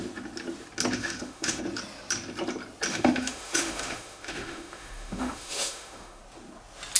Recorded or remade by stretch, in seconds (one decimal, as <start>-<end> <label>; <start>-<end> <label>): 0.0-1.0 recorded; 1.0-1.6 remade; 1.6-2.9 recorded; 2.9-6.2 remade; 6.2-7.0 recorded